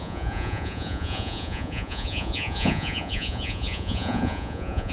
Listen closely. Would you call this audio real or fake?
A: fake